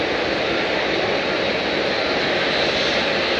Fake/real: real